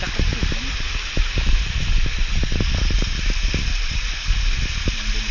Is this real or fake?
real